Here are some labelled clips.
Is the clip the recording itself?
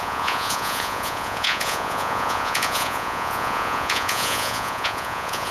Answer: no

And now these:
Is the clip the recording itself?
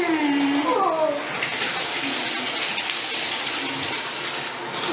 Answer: yes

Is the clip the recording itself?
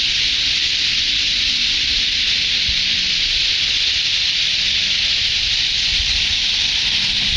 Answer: yes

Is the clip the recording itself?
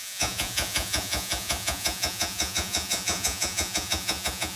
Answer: no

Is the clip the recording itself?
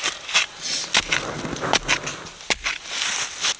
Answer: yes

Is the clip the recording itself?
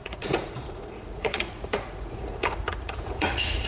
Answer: no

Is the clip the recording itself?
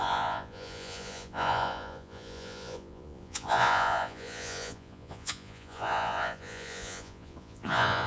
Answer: no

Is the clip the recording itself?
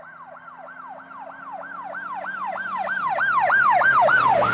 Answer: yes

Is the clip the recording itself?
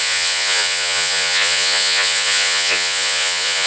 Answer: no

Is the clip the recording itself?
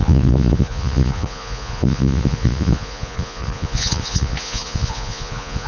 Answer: no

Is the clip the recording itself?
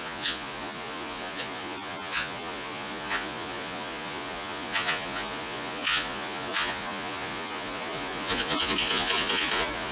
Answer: no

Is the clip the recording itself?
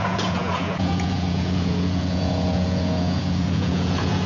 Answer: no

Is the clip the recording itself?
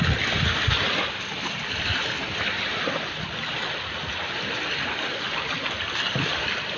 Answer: yes